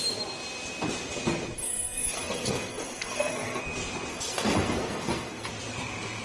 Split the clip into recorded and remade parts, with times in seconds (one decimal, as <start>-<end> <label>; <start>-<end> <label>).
0.0-1.6 recorded; 1.6-3.6 remade; 3.6-4.1 recorded; 4.1-5.5 remade; 5.5-6.2 recorded